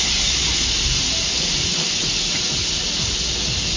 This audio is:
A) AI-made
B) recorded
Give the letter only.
B